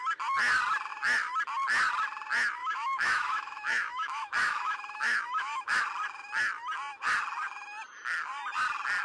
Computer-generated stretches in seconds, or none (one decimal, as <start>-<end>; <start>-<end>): 2.6-5.8